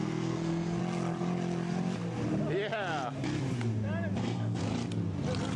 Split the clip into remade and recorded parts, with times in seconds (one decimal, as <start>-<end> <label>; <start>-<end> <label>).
0.0-0.8 remade; 0.8-4.2 recorded; 4.2-4.7 remade; 4.7-5.6 recorded